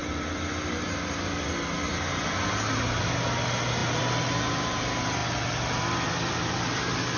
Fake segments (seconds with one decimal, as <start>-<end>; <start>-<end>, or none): 3.8-4.6; 5.2-6.8